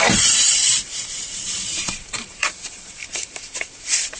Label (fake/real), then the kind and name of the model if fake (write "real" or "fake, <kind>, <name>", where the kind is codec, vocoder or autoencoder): fake, vocoder, BigVGAN v2